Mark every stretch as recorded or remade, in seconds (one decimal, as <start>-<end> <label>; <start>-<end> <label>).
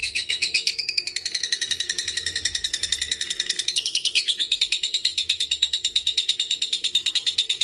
0.0-7.6 remade